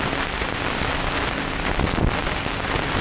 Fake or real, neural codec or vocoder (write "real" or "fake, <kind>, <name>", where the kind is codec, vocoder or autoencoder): real